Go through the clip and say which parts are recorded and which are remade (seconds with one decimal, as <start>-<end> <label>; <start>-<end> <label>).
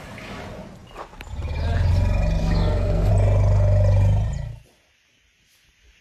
0.0-2.4 recorded; 2.4-3.1 remade; 3.1-6.0 recorded